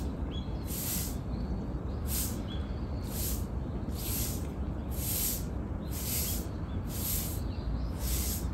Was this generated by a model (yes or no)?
no